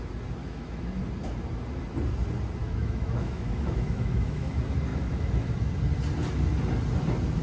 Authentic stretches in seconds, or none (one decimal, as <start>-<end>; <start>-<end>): 0.0-0.4; 1.0-2.6; 4.5-4.9; 5.7-7.4